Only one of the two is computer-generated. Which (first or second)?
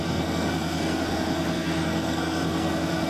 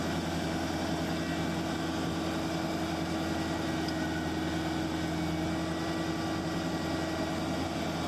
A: first